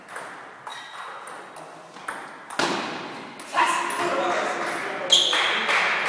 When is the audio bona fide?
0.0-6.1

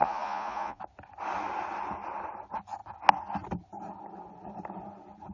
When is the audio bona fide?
0.8-5.3